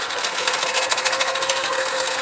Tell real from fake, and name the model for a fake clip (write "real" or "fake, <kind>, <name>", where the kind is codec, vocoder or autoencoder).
fake, codec, SNAC